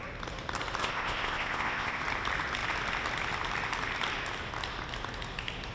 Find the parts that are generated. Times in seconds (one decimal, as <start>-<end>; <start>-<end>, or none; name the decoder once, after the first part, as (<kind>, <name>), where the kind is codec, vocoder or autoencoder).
0.8-2.0 (codec, ZipCodec)